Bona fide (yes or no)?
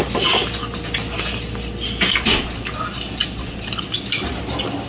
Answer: yes